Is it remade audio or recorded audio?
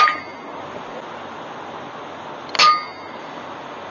recorded